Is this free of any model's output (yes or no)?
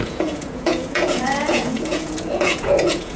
no